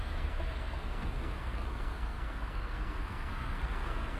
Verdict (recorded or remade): remade